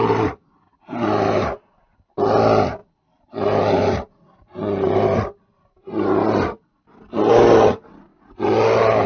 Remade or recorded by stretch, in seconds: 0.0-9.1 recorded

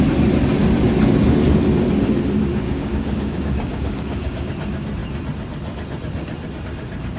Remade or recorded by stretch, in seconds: 0.0-2.5 recorded; 2.5-4.5 remade; 4.5-7.2 recorded

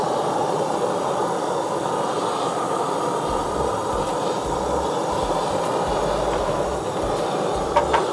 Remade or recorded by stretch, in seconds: 0.0-1.4 recorded; 1.4-1.9 remade; 1.9-8.1 recorded

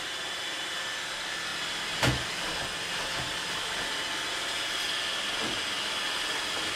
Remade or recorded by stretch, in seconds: 0.0-6.8 recorded

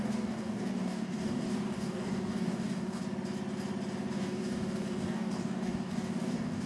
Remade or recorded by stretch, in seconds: 0.0-3.0 remade; 3.0-4.1 recorded; 4.1-6.7 remade

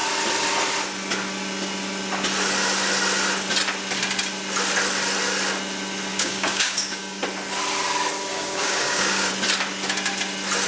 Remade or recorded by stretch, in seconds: 0.0-6.1 recorded; 6.1-7.2 remade; 7.2-8.3 recorded; 8.3-9.3 remade; 9.3-10.7 recorded

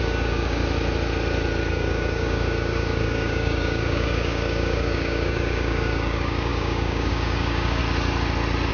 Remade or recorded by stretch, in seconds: 0.0-0.6 remade; 0.6-1.7 recorded; 1.7-7.8 remade; 7.8-8.7 recorded

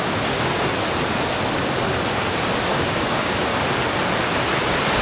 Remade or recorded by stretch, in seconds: 0.0-0.7 remade; 0.7-2.1 recorded; 2.1-3.5 remade; 3.5-5.0 recorded